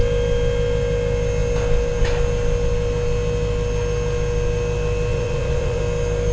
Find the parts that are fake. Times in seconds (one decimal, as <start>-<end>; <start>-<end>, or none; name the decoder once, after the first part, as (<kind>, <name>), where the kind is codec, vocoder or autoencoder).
5.1-5.8 (vocoder, Vocos)